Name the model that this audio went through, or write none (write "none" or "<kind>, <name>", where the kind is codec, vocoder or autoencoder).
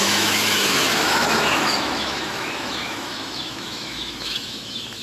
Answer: autoencoder, DAC-VAE